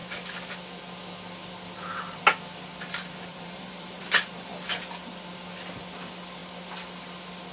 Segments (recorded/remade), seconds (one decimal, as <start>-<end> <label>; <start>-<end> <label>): 0.0-3.3 recorded; 3.3-4.0 remade; 4.0-7.5 recorded